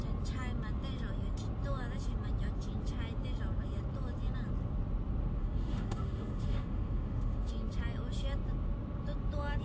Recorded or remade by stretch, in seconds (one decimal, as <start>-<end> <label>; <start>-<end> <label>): 0.0-5.4 recorded; 5.4-7.5 remade; 7.5-9.6 recorded